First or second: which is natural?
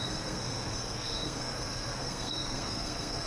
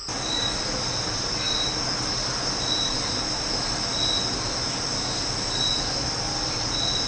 second